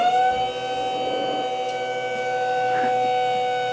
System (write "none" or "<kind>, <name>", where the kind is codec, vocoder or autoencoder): none